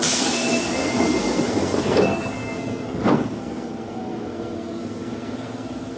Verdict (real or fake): fake